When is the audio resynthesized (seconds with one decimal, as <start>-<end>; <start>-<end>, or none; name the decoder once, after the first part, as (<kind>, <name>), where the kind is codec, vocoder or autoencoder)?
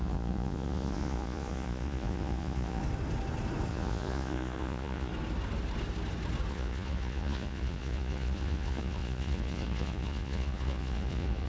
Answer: 0.0-2.8 (vocoder, Vocos); 3.7-5.1; 6.5-11.5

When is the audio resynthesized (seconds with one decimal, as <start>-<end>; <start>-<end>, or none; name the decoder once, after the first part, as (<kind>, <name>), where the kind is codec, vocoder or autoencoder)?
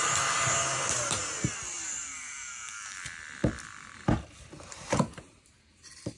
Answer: 0.0-6.2 (vocoder, BigVGAN v2)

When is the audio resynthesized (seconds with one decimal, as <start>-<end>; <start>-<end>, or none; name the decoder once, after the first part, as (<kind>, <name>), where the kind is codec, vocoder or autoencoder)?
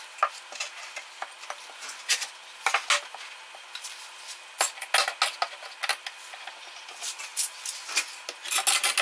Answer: none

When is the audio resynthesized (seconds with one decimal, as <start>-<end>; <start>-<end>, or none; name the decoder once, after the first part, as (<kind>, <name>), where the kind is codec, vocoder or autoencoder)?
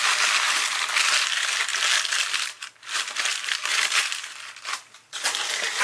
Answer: none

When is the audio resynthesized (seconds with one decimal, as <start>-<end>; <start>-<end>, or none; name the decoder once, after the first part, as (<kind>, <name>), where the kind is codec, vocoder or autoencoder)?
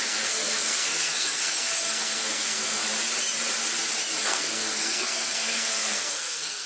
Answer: 0.0-2.8 (codec, SNAC); 4.2-6.7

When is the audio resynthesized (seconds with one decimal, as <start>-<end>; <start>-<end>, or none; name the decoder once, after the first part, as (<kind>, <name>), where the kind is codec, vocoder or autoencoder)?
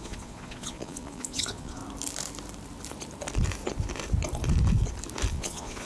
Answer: 0.0-1.8 (vocoder, Vocos); 5.3-5.9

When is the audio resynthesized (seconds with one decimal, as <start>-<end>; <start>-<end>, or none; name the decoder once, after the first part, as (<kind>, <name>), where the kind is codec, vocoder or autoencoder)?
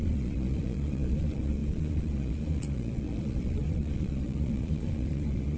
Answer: 0.0-5.6 (vocoder, Vocos)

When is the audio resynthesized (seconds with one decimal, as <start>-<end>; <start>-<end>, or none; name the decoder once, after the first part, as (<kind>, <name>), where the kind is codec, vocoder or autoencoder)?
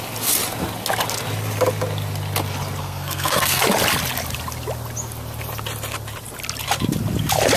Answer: 2.8-3.6 (codec, SNAC)